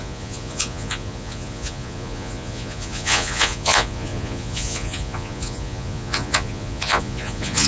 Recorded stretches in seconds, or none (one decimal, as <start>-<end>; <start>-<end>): none